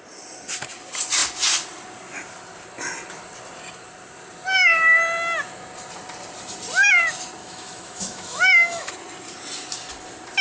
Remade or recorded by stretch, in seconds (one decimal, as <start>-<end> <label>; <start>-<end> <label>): 0.0-7.4 recorded; 7.4-8.9 remade; 8.9-10.4 recorded